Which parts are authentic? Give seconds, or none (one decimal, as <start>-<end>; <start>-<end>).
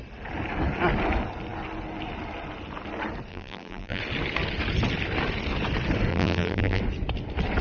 0.0-3.3; 4.0-6.1; 6.8-7.6